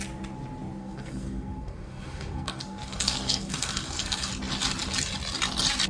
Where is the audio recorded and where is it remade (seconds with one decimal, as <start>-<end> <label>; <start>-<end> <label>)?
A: 0.0-0.8 recorded; 0.8-4.3 remade; 4.3-5.9 recorded